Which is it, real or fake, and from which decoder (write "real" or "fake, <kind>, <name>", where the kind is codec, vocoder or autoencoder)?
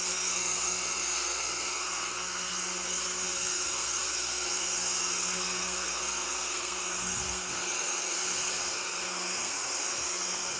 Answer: fake, codec, SNAC